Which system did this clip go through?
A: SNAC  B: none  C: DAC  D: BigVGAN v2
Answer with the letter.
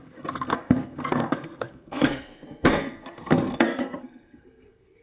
A